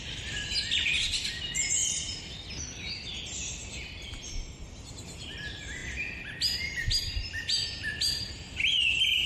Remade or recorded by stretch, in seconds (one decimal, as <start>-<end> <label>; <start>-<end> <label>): 0.0-9.3 recorded